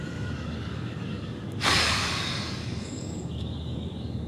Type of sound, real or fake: fake